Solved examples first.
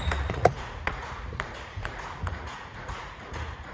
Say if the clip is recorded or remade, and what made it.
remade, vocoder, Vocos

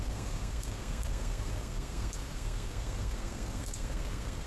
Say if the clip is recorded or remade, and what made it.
remade, codec, SNAC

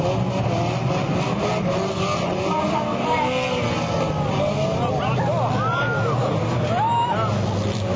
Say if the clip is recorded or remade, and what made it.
recorded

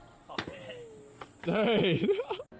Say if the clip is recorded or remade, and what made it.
recorded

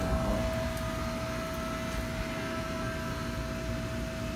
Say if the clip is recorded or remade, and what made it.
recorded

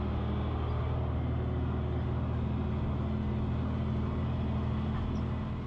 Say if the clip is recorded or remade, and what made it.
recorded